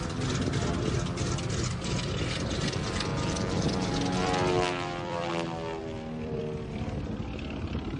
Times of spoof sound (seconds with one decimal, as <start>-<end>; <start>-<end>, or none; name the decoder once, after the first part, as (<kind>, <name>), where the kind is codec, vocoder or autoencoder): 3.1-5.3 (vocoder, BigVGAN v2); 5.8-6.4